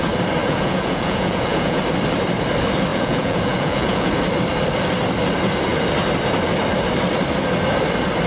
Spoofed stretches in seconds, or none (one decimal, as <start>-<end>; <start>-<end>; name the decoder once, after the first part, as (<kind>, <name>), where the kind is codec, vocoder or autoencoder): 0.4-1.8 (vocoder, Vocos); 2.9-4.1